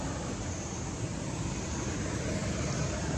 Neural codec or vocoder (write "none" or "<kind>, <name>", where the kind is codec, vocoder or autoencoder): vocoder, BigVGAN v2